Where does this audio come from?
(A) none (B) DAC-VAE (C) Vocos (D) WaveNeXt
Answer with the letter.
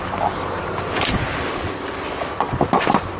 A